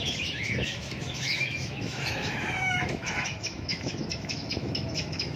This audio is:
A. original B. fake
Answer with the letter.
B